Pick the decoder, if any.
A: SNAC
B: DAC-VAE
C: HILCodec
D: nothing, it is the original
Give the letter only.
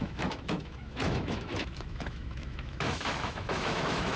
B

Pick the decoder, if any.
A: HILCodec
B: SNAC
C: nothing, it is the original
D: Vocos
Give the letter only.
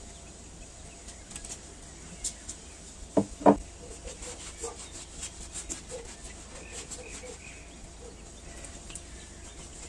C